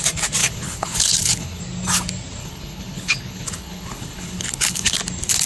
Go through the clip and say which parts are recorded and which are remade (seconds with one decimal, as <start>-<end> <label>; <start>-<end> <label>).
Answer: 0.0-0.4 recorded; 0.4-1.6 remade; 1.6-2.4 recorded; 2.4-5.0 remade; 5.0-5.5 recorded